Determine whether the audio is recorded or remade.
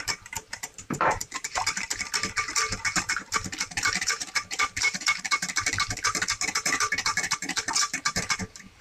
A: remade